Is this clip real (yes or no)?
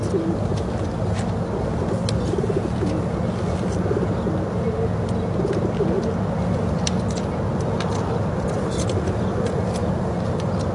yes